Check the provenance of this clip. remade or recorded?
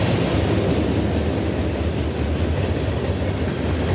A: recorded